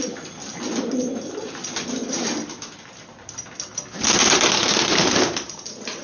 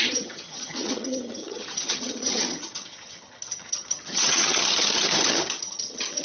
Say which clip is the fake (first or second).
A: second